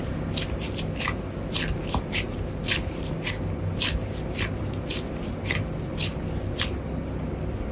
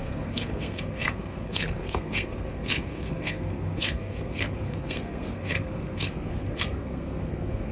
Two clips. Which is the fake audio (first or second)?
second